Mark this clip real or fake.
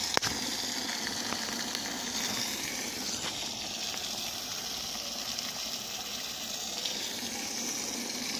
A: real